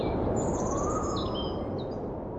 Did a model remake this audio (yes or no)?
no